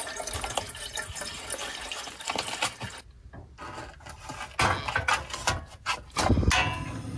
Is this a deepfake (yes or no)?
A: no